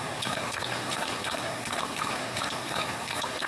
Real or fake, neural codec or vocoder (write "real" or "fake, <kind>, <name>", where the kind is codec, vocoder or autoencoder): fake, codec, SNAC